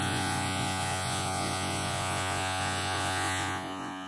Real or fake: fake